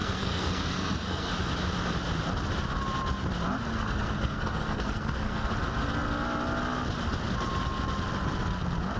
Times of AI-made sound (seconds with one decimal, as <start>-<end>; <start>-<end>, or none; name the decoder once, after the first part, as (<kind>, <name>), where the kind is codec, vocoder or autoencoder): 0.0-1.3 (codec, SNAC); 3.7-5.5